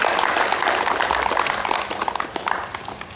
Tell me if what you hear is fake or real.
real